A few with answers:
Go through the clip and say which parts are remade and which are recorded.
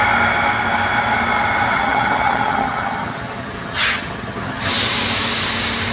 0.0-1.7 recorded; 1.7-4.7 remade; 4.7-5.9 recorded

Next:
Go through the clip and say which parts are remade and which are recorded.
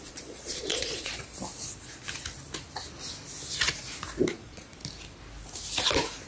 0.0-1.1 remade; 1.1-4.3 recorded; 4.3-4.8 remade; 4.8-6.3 recorded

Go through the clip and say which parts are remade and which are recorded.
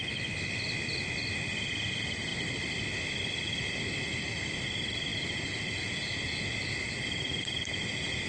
0.0-8.3 recorded